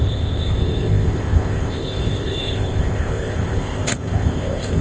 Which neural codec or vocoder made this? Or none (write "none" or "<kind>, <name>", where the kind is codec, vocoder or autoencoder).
codec, ZipCodec